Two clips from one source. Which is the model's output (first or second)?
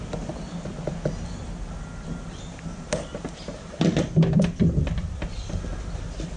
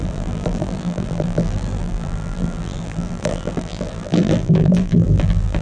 second